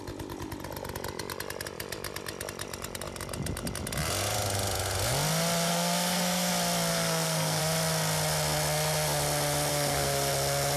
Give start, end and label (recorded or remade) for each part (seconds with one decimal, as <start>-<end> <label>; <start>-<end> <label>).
0.0-5.7 recorded; 5.7-6.5 remade; 6.5-6.9 recorded; 6.9-7.6 remade; 7.6-9.7 recorded; 9.7-10.3 remade; 10.3-10.8 recorded